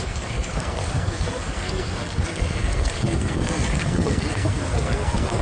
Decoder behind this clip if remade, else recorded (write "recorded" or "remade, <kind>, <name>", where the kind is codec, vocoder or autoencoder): remade, codec, SNAC